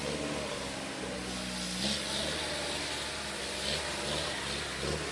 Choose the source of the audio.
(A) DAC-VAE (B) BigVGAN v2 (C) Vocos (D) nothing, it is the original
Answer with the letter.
D